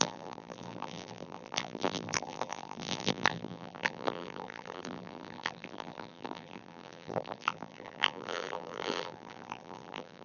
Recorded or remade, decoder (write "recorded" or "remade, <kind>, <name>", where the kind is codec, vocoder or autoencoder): remade, vocoder, BigVGAN v2